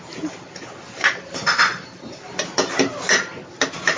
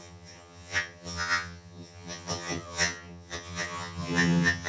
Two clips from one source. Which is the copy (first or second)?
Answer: second